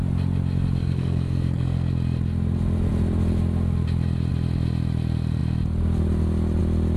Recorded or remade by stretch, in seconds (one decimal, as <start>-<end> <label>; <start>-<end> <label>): 0.0-0.8 recorded; 0.8-1.9 remade; 1.9-7.0 recorded